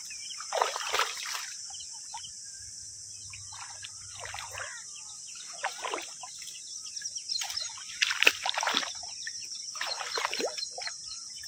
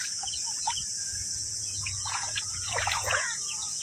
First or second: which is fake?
second